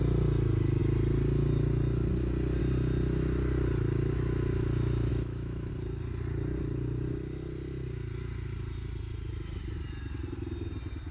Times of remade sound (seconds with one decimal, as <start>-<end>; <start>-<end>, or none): 5.1-5.7